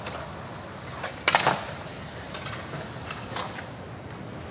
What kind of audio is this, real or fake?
real